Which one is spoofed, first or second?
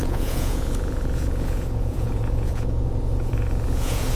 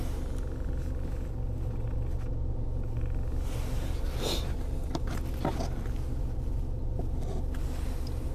first